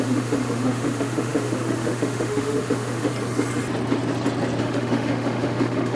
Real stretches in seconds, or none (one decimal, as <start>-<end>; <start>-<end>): 3.1-4.6